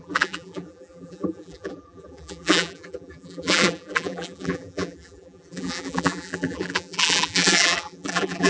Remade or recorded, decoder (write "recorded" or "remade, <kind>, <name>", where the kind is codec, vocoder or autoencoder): remade, vocoder, BigVGAN v2